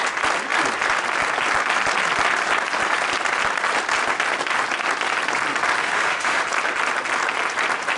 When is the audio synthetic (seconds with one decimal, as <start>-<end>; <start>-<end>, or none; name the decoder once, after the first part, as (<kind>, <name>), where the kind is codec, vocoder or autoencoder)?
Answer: 5.8-6.4 (autoencoder, DAC-VAE)